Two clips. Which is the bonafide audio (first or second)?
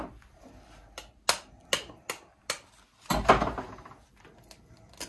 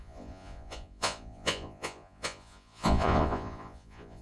first